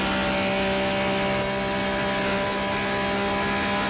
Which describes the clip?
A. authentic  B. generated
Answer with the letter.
A